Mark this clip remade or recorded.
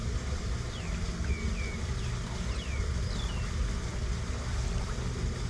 recorded